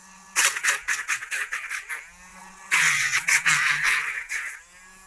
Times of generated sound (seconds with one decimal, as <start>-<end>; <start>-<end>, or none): 0.0-1.9; 2.3-4.5